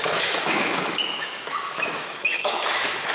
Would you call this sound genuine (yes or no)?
no